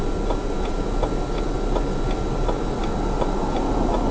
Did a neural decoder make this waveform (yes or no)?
no